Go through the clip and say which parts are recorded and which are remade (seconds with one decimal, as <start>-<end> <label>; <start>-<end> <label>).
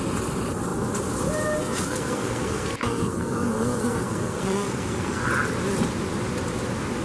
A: 0.0-1.6 recorded; 1.6-5.3 remade; 5.3-7.0 recorded